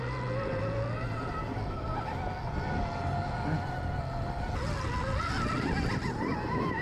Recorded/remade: recorded